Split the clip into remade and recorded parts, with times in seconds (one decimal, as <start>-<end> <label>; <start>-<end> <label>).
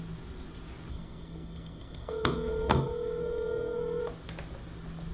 0.0-0.9 recorded; 0.9-4.0 remade; 4.0-5.1 recorded